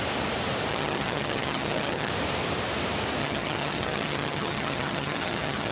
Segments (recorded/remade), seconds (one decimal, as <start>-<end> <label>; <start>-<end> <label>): 0.0-0.7 recorded; 0.7-2.1 remade; 2.1-3.2 recorded; 3.2-5.7 remade